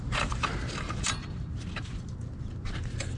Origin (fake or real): real